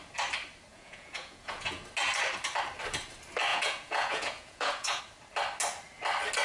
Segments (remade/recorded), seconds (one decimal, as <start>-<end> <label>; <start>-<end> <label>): 0.0-0.7 recorded; 0.7-1.8 remade; 1.8-3.5 recorded; 3.5-5.0 remade; 5.0-6.4 recorded